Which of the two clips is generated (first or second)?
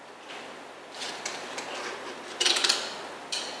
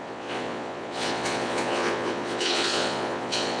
second